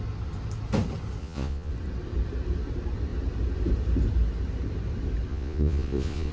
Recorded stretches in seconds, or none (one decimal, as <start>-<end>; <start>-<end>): 0.0-1.2; 1.7-5.3